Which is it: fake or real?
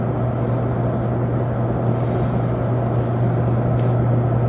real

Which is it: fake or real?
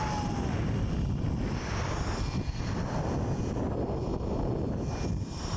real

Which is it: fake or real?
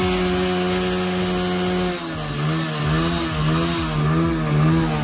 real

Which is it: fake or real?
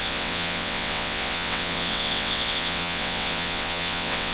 fake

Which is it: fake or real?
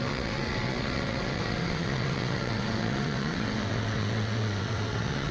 fake